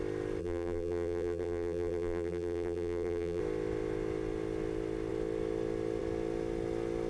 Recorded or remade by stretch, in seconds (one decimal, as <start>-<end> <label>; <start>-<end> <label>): 0.0-0.4 recorded; 0.4-3.4 remade; 3.4-7.1 recorded